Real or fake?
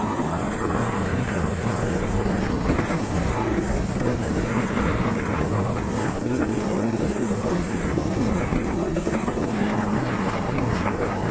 fake